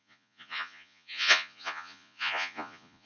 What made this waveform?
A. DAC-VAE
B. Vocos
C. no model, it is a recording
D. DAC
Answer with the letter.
B